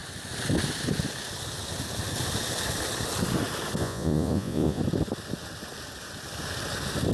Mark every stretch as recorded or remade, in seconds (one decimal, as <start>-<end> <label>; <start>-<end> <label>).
0.0-3.8 recorded; 3.8-4.8 remade; 4.8-7.1 recorded